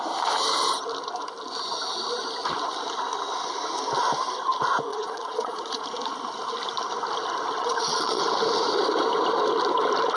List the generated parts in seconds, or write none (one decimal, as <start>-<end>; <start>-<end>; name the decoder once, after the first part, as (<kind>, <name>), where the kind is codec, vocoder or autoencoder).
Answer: 4.9-5.8 (vocoder, Vocos); 7.6-8.2